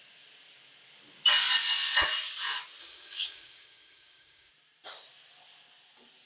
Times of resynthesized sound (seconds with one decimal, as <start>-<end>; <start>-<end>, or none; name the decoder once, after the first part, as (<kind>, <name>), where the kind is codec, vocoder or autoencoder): 2.8-4.5 (codec, DAC)